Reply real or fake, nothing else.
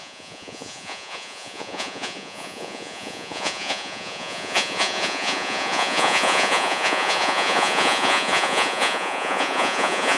fake